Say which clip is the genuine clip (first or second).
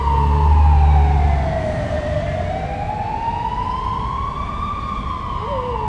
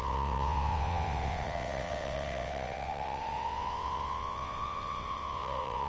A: first